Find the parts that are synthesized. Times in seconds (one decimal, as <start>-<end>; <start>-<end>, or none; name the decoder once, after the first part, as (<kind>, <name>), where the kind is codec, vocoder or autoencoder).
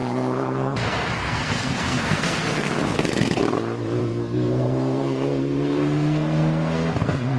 0.0-3.4 (codec, SNAC); 4.0-7.4